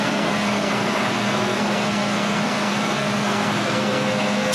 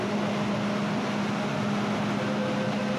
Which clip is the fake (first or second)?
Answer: first